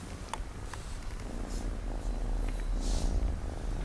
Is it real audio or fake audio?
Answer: real